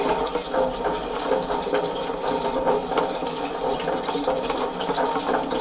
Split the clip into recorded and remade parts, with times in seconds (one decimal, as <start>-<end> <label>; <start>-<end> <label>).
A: 0.0-0.4 remade; 0.4-1.5 recorded; 1.5-5.6 remade